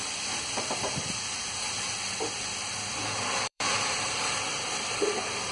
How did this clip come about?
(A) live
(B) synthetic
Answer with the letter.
B